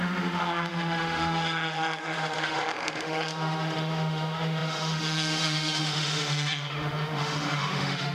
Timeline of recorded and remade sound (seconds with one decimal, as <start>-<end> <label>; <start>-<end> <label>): 0.0-8.1 remade